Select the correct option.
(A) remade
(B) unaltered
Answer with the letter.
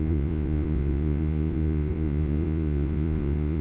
A